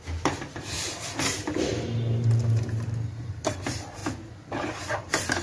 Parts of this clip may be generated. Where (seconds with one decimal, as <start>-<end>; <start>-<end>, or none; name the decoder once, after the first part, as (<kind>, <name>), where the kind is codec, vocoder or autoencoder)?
0.0-1.7 (vocoder, BigVGAN v2); 3.2-4.0; 4.7-5.4